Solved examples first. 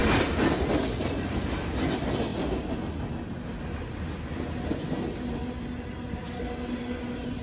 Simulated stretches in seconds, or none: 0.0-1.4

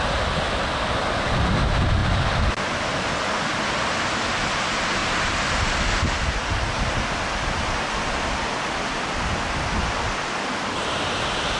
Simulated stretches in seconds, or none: 2.0-2.5

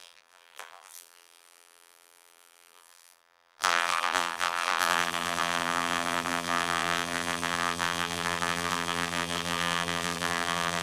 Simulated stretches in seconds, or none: 0.0-10.8

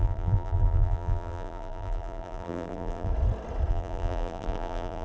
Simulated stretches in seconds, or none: 0.0-3.1; 3.7-5.0

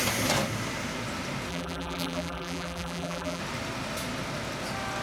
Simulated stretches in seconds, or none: 1.5-3.4

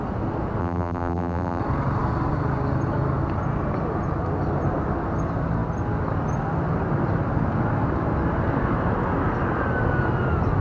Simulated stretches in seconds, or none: 0.6-1.6